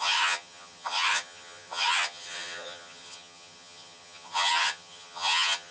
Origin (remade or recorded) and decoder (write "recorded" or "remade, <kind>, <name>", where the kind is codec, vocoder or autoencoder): remade, vocoder, HiFi-GAN